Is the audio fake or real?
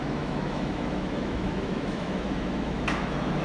fake